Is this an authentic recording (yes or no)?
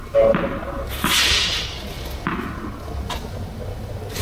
yes